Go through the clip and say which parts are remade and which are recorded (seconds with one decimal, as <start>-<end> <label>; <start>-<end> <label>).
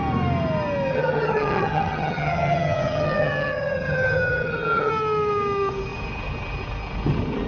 0.0-0.9 recorded; 0.9-4.9 remade; 4.9-7.5 recorded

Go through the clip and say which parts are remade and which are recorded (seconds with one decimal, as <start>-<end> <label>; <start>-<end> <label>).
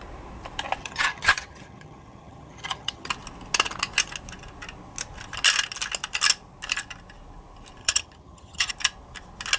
0.0-0.8 recorded; 0.8-3.1 remade; 3.1-7.8 recorded; 7.8-8.7 remade; 8.7-9.6 recorded